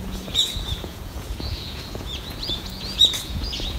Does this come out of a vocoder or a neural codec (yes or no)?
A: yes